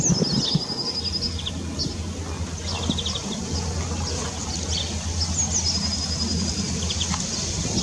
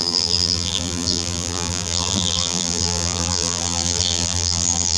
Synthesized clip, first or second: second